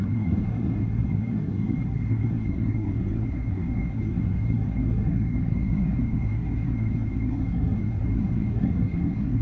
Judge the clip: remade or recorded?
remade